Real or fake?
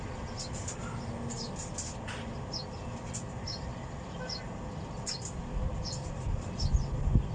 real